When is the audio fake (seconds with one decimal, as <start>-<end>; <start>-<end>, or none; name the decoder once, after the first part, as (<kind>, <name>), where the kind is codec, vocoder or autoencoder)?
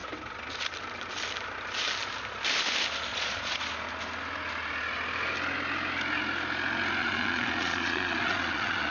3.1-3.6 (vocoder, Vocos); 7.0-8.9